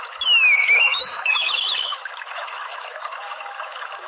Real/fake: fake